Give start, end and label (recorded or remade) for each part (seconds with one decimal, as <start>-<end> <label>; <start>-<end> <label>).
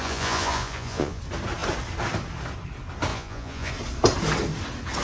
0.0-1.2 remade; 1.2-3.1 recorded; 3.1-3.7 remade; 3.7-5.0 recorded